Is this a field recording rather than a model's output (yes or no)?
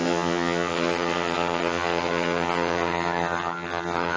no